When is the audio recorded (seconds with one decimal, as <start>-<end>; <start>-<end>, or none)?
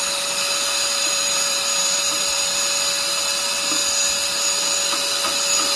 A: 0.0-1.0; 2.5-5.8